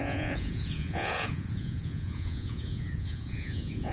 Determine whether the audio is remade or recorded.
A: remade